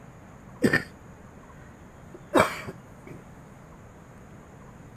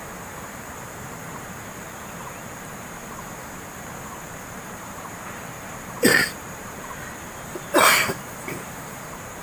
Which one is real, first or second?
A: first